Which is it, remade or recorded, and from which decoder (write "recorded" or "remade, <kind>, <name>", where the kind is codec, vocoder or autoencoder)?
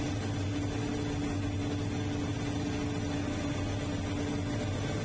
recorded